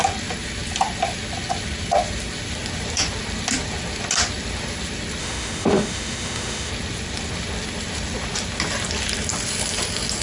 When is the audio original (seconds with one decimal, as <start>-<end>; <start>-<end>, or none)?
0.0-5.2; 6.7-10.2